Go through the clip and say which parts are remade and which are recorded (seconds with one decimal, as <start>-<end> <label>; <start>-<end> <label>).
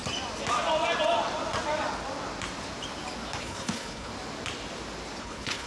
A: 0.0-3.4 recorded; 3.4-4.1 remade; 4.1-5.2 recorded; 5.2-5.7 remade